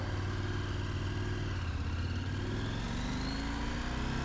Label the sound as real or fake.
real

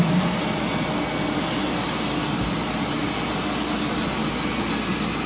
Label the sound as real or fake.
real